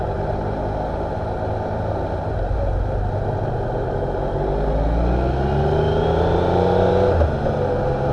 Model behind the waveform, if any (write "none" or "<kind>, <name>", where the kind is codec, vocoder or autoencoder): none